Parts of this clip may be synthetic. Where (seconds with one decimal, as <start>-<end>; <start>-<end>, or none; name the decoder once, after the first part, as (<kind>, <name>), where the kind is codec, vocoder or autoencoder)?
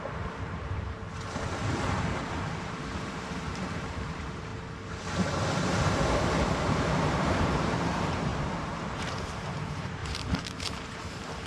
0.0-1.0 (vocoder, BigVGAN v2); 2.6-4.5; 5.7-10.0; 10.6-11.5